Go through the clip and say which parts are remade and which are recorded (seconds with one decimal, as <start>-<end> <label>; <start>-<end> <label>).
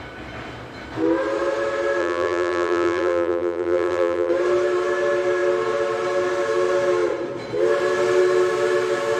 0.0-2.0 recorded; 2.0-4.3 remade; 4.3-9.2 recorded